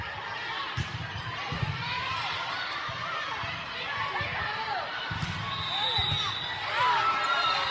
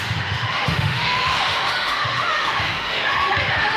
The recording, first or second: first